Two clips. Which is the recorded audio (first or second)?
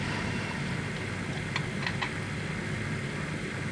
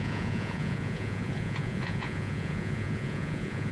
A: first